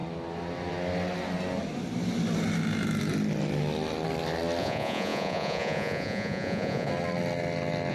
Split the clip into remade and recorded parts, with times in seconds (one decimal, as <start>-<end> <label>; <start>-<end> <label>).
0.0-4.6 recorded; 4.6-6.9 remade; 6.9-7.9 recorded